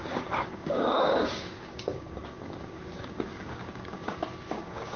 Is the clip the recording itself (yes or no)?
no